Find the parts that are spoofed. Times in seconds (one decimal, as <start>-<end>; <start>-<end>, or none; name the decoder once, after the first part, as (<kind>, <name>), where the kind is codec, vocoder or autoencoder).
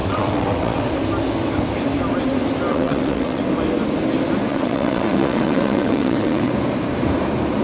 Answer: 0.0-0.8 (vocoder, WaveNeXt); 2.7-3.4; 4.5-6.5